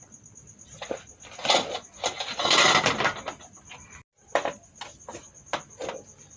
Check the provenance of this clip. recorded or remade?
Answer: recorded